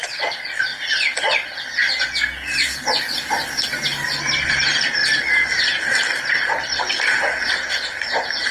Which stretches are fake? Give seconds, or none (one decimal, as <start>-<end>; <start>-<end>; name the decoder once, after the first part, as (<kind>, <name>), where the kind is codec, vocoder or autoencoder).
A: 0.0-0.7 (vocoder, BigVGAN v2); 4.4-8.5